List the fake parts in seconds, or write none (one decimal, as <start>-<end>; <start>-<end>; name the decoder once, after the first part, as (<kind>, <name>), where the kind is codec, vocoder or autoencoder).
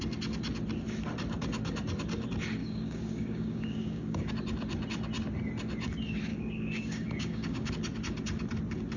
2.6-4.3 (codec, DAC); 6.3-7.7